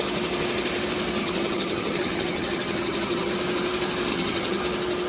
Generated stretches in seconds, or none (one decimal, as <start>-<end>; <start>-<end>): 1.2-3.3; 4.1-4.6